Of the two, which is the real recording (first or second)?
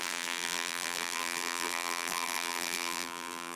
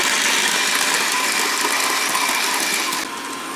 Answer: second